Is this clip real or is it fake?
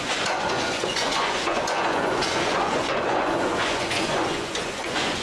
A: fake